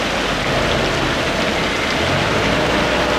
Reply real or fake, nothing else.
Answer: real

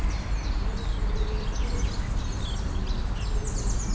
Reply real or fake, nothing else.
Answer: real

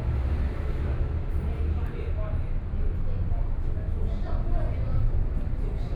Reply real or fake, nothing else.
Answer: real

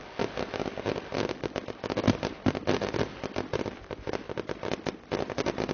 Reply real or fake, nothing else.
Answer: real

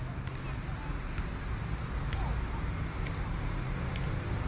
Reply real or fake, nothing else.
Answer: real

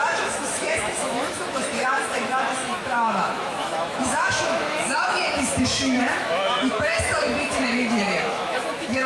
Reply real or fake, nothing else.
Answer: fake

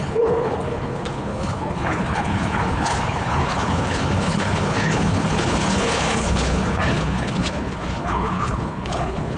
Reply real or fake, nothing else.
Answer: fake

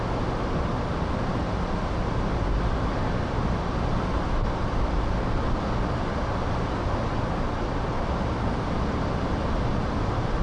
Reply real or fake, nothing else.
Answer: fake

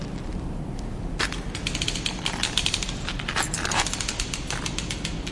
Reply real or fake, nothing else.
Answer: real